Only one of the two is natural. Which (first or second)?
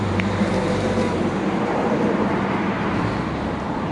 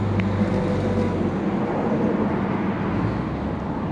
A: second